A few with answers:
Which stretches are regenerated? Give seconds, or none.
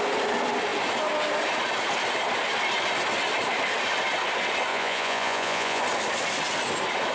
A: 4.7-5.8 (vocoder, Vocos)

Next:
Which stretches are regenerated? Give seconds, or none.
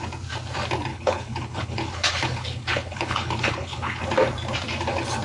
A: 0.9-4.0 (codec, HILCodec)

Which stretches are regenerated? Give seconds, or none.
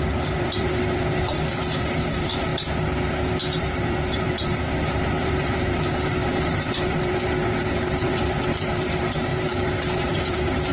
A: 0.0-2.5 (vocoder, BigVGAN v2); 3.6-10.7